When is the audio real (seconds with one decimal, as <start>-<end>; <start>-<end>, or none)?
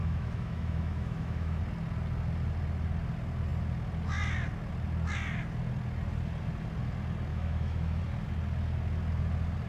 1.6-7.3; 8.0-9.7